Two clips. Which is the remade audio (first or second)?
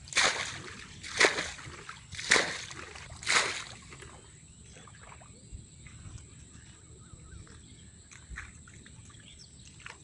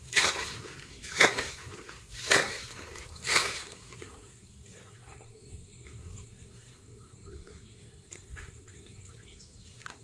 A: second